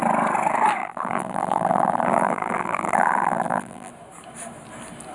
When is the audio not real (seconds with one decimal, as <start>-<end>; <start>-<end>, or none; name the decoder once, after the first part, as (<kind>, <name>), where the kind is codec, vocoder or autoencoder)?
0.8-3.9 (vocoder, BigVGAN v2)